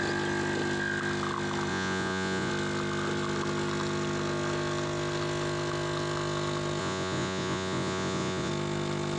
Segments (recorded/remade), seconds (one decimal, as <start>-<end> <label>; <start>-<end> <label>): 0.0-1.7 recorded; 1.7-2.5 remade; 2.5-6.8 recorded; 6.8-8.5 remade; 8.5-9.2 recorded